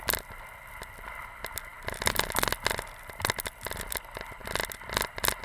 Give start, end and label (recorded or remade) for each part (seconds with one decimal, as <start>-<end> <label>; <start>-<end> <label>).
0.0-5.4 recorded